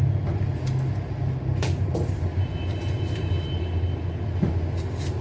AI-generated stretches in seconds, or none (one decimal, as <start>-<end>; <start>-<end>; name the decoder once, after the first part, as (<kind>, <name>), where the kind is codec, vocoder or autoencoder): none

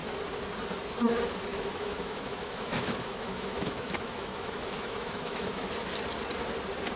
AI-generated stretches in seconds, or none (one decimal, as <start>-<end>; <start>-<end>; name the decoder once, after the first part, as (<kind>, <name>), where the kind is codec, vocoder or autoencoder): 1.5-5.7 (autoencoder, DAC-VAE)

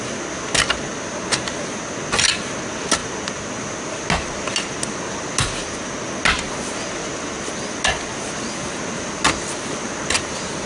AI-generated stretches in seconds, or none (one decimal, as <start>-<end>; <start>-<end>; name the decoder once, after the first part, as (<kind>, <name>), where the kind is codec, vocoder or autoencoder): none

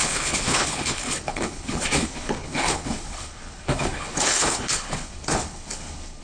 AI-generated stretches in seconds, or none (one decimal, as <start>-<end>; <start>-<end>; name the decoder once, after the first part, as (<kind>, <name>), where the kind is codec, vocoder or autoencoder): 0.0-6.2 (codec, HILCodec)

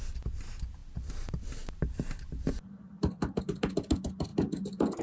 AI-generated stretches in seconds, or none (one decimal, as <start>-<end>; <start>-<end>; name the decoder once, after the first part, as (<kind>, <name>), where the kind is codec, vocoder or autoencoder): none

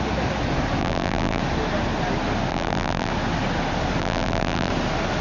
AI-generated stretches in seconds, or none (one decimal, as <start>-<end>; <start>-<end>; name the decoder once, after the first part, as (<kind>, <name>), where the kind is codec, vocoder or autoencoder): 0.8-1.4 (vocoder, BigVGAN v2); 2.5-3.1; 4.0-4.7